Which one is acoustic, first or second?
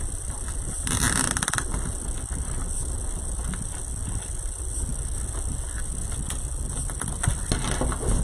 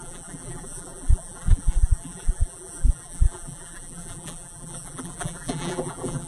first